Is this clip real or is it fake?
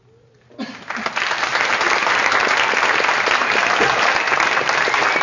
real